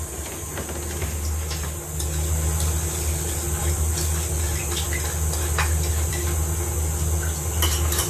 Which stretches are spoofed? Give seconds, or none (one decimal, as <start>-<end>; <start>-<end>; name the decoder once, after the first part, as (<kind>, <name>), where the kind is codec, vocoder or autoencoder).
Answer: none

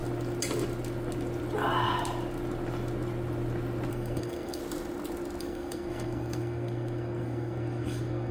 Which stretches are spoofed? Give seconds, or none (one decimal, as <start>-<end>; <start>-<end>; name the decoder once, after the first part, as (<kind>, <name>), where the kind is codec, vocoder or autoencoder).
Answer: 3.9-4.6 (codec, SNAC); 5.4-8.3

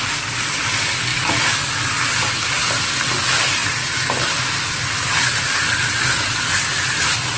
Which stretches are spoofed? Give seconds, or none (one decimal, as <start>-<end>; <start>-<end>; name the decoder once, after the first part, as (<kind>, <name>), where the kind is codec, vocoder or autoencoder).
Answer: none

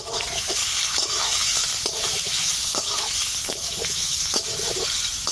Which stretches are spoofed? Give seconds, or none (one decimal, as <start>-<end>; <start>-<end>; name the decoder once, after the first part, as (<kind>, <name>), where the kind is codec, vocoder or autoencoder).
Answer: 0.0-5.3 (autoencoder, DAC-VAE)

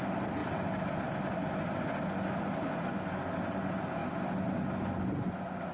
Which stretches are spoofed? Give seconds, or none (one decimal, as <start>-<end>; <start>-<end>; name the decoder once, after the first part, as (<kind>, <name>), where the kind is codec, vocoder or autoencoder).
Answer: none

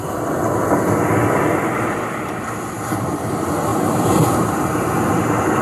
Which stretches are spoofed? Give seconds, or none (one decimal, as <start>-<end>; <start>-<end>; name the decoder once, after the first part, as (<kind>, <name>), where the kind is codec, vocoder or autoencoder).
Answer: 3.7-4.9 (vocoder, BigVGAN v2)

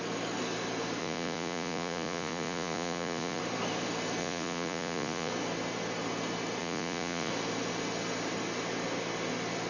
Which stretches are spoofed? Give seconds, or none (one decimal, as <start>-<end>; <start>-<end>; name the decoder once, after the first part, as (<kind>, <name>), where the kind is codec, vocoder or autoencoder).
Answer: 1.0-3.4 (vocoder, Vocos); 4.2-5.3; 6.6-7.3